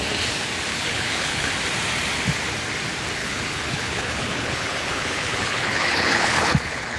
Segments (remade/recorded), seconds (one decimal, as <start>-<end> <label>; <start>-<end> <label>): 0.0-0.7 recorded; 0.7-1.5 remade; 1.5-3.2 recorded; 3.2-7.0 remade